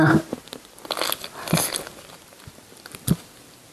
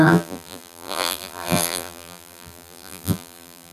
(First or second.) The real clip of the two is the first